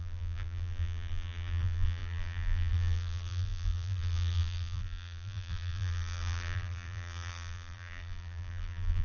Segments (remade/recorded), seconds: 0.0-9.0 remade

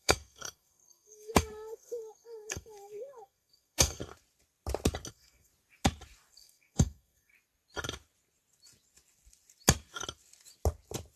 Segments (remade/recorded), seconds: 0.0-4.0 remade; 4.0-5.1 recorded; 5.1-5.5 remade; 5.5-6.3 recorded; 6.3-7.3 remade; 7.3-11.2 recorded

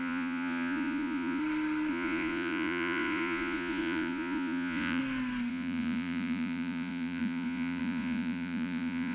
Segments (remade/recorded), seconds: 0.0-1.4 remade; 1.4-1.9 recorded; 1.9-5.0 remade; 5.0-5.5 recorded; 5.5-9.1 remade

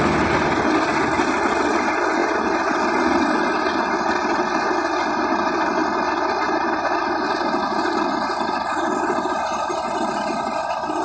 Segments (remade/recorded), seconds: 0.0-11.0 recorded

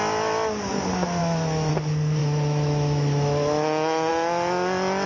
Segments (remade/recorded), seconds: 0.0-1.2 recorded; 1.2-1.7 remade; 1.7-2.2 recorded; 2.2-4.1 remade; 4.1-5.1 recorded

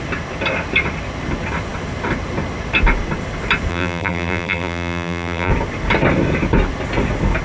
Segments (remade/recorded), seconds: 0.0-3.7 recorded; 3.7-5.5 remade; 5.5-7.4 recorded

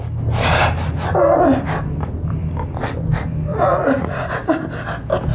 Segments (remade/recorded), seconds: 0.0-3.5 recorded; 3.5-4.5 remade; 4.5-5.3 recorded

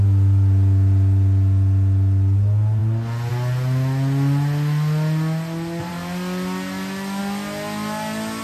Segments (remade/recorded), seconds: 0.0-8.4 recorded